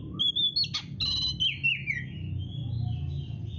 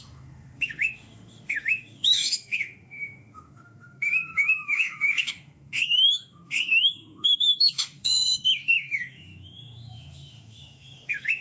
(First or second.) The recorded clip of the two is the first